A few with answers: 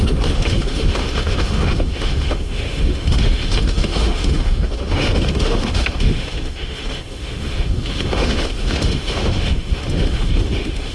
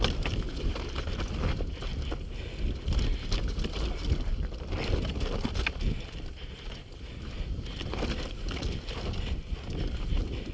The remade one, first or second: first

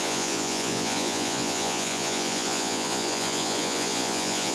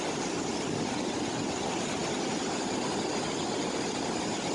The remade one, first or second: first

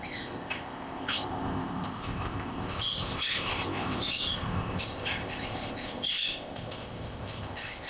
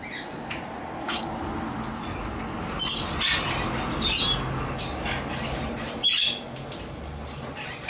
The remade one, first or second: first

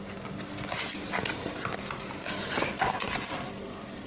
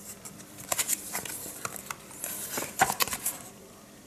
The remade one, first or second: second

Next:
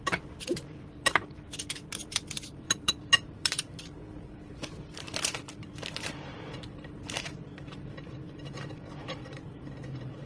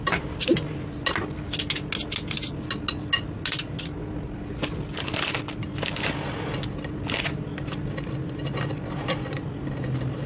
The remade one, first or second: first